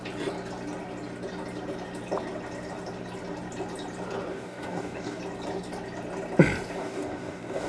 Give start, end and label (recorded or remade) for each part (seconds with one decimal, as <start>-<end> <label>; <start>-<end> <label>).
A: 0.0-4.3 recorded; 4.3-5.2 remade; 5.2-6.8 recorded; 6.8-7.7 remade